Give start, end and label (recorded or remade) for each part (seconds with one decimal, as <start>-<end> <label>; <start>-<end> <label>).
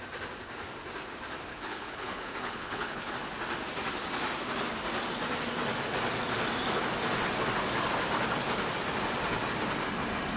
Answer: 0.0-1.5 recorded; 1.5-3.1 remade; 3.1-10.4 recorded